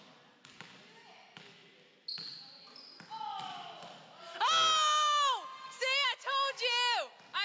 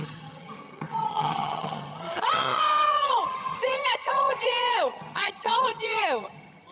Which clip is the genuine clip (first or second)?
first